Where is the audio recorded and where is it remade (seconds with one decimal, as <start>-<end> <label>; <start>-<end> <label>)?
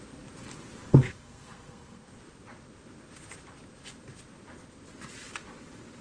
0.0-0.9 recorded; 0.9-2.2 remade; 2.2-6.0 recorded